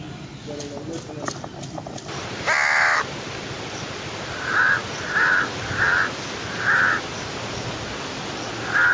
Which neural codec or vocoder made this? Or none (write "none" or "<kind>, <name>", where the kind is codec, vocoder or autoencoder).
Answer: none